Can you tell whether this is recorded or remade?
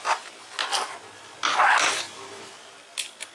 recorded